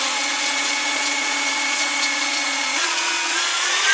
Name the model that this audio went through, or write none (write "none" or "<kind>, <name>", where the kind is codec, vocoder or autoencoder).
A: vocoder, Vocos